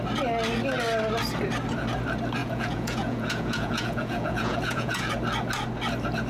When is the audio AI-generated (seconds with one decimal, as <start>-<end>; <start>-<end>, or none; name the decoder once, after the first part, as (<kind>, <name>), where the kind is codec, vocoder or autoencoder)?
2.4-5.1 (vocoder, Vocos)